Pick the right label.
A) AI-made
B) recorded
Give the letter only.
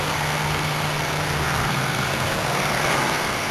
A